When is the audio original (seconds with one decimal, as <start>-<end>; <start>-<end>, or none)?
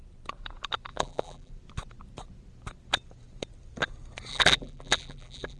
0.0-0.9; 1.5-4.3